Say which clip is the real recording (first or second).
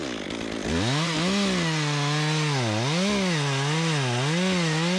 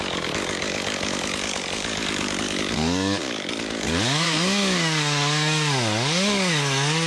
first